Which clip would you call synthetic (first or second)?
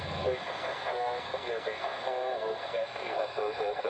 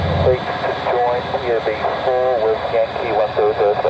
first